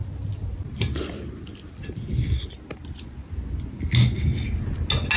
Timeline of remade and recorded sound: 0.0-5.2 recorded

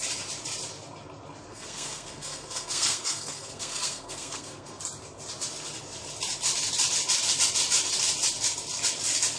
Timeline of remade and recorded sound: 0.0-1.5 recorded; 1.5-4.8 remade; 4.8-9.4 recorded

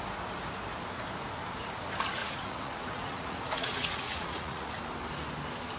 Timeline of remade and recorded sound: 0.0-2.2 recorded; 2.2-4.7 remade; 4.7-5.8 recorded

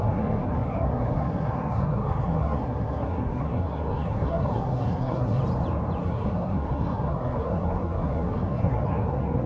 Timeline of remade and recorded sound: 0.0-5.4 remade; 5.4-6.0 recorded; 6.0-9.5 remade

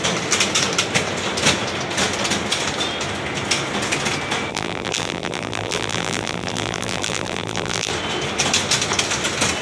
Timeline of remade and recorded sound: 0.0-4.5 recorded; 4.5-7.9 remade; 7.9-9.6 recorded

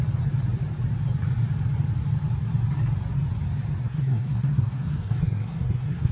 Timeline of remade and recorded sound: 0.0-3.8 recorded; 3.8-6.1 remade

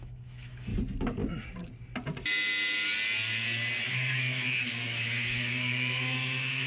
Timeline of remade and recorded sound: 0.0-0.7 remade; 0.7-3.9 recorded; 3.9-6.7 remade

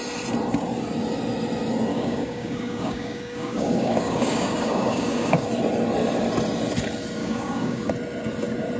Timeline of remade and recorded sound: 0.0-1.9 recorded; 1.9-5.5 remade; 5.5-7.2 recorded; 7.2-7.9 remade; 7.9-8.8 recorded